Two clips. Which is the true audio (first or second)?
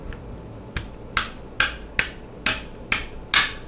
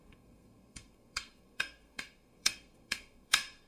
first